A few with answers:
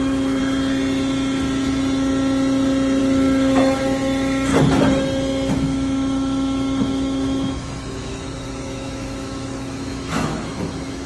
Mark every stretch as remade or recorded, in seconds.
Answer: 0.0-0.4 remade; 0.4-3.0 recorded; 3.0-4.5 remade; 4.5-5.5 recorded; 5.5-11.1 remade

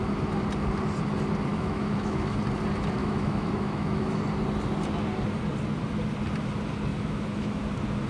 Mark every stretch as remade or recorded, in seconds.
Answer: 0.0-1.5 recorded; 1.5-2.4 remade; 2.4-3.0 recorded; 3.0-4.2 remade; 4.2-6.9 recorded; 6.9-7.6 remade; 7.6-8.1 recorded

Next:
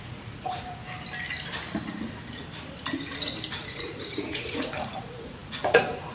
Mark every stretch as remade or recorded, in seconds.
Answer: 0.0-0.8 remade; 0.8-3.5 recorded; 3.5-6.1 remade